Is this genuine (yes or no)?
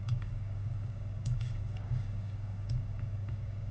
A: no